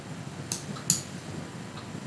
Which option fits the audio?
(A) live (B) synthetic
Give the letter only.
A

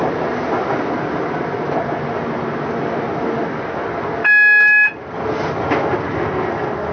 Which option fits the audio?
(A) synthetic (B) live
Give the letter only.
B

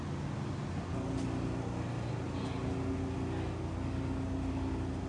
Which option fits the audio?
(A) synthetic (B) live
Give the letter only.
B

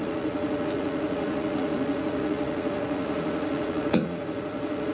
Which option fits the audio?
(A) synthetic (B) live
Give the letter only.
A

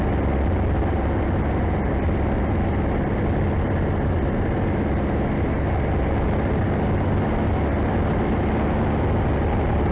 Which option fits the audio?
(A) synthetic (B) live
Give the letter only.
B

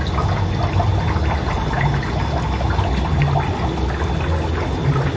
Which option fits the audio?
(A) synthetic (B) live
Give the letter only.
B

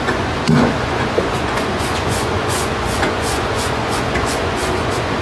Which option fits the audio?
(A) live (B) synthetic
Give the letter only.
B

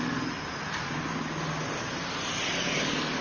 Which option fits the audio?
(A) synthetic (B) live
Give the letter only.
B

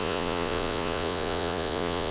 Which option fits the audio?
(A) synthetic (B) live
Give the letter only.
A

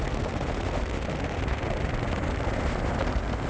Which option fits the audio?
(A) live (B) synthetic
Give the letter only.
A